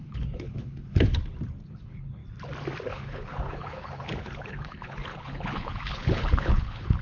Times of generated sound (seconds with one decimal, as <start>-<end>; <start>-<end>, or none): 0.0-1.2; 1.7-2.2; 2.9-7.0